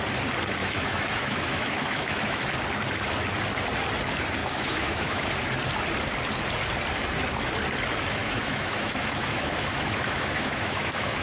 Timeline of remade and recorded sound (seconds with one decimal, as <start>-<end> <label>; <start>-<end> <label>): 0.0-0.6 recorded; 0.6-2.5 remade; 2.5-4.4 recorded; 4.4-5.3 remade; 5.3-8.2 recorded; 8.2-11.2 remade